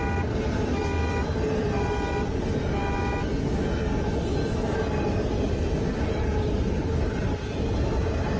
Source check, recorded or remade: recorded